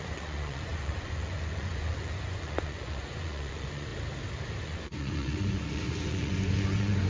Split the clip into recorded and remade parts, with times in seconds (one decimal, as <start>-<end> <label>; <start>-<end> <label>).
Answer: 0.0-3.9 remade; 3.9-4.6 recorded; 4.6-7.1 remade